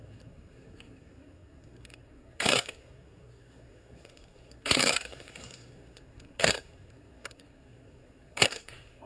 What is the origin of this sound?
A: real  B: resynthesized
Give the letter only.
B